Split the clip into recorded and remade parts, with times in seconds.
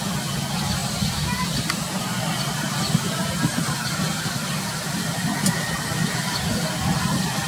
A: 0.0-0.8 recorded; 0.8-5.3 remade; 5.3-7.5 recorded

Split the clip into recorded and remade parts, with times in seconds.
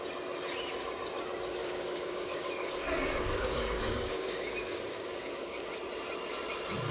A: 0.0-1.6 recorded; 1.6-5.7 remade; 5.7-6.9 recorded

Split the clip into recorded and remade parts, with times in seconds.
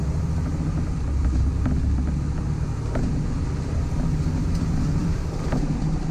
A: 0.0-6.1 recorded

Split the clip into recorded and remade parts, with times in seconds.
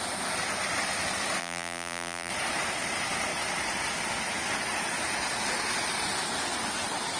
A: 0.0-1.4 recorded; 1.4-2.3 remade; 2.3-7.2 recorded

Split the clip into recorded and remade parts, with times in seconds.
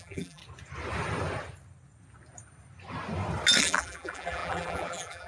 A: 0.0-0.4 remade; 0.4-3.6 recorded; 3.6-5.3 remade